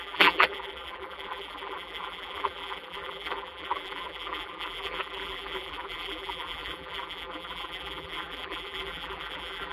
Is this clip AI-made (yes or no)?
yes